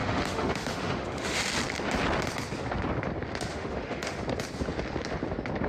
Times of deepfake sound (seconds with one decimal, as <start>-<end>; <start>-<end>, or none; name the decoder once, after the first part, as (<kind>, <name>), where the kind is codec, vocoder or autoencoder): 0.0-1.4 (autoencoder, DAC-VAE); 3.5-4.2